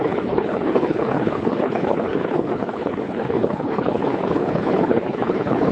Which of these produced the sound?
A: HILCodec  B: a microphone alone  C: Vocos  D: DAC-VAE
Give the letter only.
A